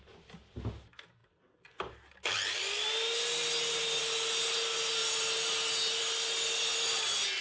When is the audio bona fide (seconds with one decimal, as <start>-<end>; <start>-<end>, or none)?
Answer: 0.0-7.4